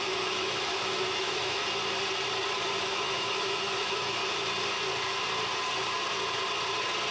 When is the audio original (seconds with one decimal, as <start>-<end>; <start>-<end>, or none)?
1.6-2.8; 4.2-7.1